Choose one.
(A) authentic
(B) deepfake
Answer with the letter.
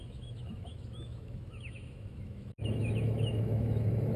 B